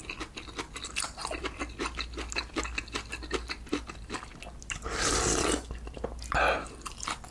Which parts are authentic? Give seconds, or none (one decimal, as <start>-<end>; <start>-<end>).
0.0-7.3